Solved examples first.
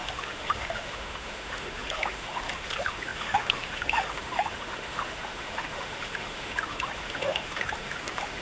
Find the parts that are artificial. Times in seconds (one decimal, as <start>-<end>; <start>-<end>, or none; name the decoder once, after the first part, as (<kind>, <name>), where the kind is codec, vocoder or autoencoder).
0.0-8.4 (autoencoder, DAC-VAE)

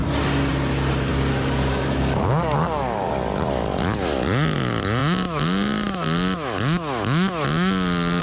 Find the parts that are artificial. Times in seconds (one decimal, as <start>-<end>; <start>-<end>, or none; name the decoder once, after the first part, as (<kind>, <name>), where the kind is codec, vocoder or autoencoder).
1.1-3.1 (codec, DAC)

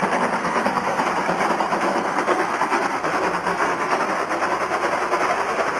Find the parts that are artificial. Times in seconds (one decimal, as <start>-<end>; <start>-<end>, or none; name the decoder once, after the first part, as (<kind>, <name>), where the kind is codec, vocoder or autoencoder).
0.4-1.0 (codec, SNAC); 1.9-3.1; 3.5-4.0

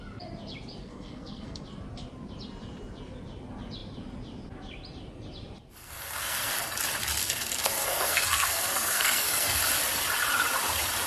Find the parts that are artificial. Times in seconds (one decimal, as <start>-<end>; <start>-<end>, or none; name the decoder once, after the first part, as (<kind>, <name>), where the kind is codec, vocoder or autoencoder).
0.8-1.6 (codec, SNAC); 5.8-6.5; 7.2-9.6

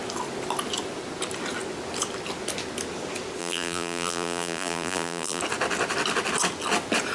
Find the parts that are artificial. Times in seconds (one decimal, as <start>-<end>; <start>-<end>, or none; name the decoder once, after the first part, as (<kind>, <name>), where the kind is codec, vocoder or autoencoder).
3.4-5.4 (vocoder, BigVGAN v2)

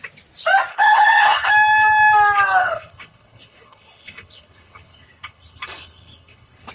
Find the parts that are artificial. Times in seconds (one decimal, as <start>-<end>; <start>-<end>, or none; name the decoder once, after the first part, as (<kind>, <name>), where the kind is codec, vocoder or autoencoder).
0.7-1.5 (codec, HILCodec); 2.6-6.7